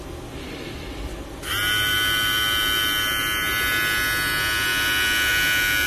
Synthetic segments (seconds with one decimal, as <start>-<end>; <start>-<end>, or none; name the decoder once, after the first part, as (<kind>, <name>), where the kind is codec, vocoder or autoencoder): none